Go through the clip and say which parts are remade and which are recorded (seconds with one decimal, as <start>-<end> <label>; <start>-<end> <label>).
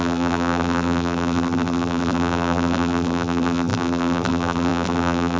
0.0-5.4 remade